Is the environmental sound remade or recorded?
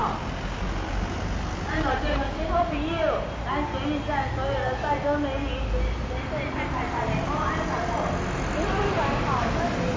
recorded